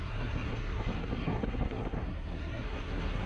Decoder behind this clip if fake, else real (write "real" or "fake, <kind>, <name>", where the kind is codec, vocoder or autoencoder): fake, codec, SNAC